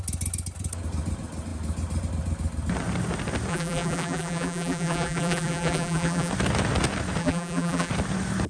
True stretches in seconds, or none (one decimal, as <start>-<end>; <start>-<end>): 0.0-3.5; 6.3-7.2; 7.9-8.5